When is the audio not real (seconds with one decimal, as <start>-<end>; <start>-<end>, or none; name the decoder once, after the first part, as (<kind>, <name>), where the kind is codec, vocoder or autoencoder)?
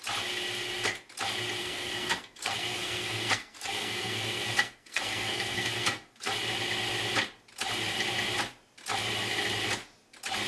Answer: 1.6-6.3 (codec, SNAC)